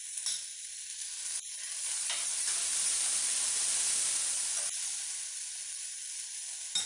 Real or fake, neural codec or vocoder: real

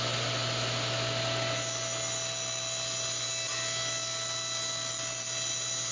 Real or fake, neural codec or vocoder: real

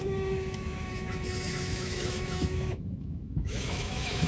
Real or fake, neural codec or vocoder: fake, autoencoder, DAC-VAE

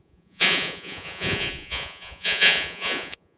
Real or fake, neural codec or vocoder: fake, vocoder, Vocos